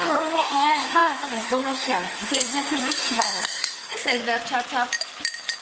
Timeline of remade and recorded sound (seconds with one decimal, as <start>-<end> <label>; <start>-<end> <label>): 0.0-4.2 remade; 4.2-5.6 recorded